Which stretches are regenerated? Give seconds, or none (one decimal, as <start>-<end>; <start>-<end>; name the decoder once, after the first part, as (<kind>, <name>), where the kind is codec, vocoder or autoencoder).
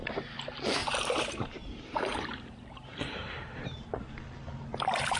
0.8-3.9 (vocoder, BigVGAN v2)